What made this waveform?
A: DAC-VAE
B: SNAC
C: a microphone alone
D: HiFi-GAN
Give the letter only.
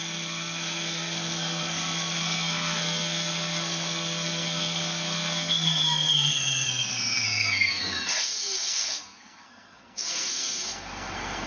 B